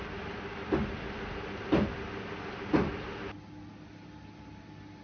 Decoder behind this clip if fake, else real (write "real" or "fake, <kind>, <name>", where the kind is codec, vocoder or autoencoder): real